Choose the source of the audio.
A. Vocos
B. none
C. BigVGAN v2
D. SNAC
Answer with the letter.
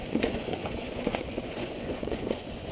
A